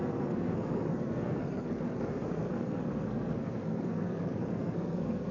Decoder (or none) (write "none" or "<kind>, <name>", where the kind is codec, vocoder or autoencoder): codec, SNAC